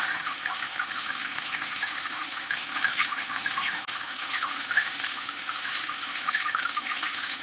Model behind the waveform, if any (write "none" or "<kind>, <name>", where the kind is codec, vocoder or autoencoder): autoencoder, DAC-VAE